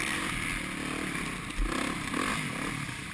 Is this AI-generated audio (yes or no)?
no